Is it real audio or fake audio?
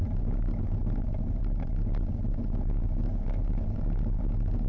real